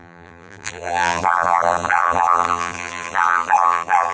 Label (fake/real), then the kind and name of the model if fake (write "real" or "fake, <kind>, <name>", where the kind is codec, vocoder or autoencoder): fake, vocoder, BigVGAN v2